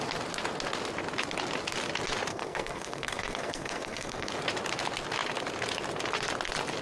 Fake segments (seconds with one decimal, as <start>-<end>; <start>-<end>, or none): 2.3-4.3